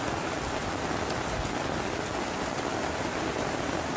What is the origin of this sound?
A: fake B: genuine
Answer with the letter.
B